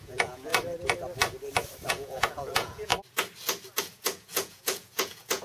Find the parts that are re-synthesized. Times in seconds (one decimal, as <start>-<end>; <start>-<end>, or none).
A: 0.0-0.5; 1.9-2.9; 3.8-5.4